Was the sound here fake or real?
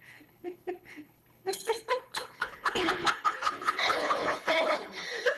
fake